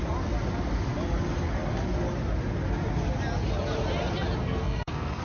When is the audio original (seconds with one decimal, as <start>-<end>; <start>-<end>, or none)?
0.0-4.4